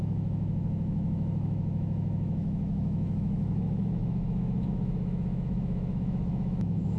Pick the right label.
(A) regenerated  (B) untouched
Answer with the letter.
A